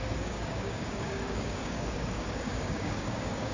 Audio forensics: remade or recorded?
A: remade